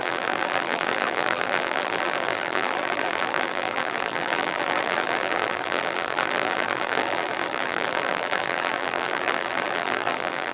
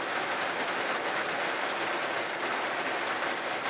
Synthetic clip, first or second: first